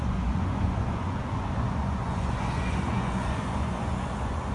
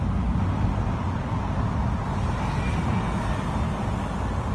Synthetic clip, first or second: first